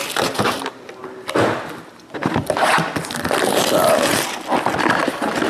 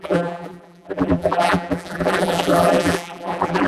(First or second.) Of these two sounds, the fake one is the second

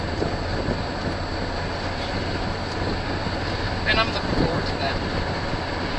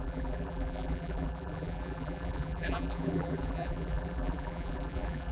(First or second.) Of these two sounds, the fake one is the second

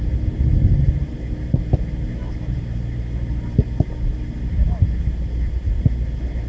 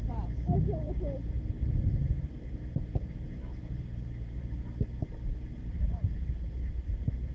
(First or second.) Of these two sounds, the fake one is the second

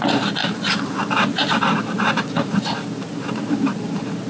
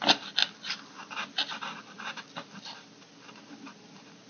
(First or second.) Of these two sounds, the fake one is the first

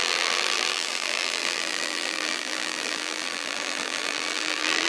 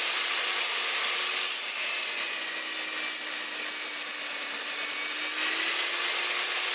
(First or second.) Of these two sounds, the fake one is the first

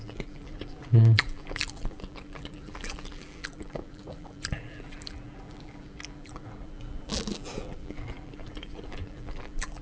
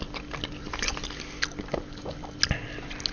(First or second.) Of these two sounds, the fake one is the first